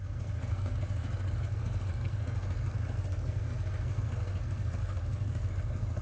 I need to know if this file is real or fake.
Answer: fake